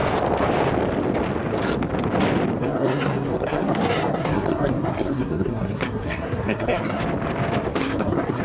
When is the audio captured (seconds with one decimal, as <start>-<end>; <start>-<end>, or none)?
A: 0.0-2.6; 7.0-7.8